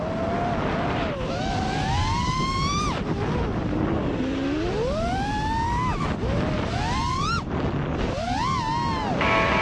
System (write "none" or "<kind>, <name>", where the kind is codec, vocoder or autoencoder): none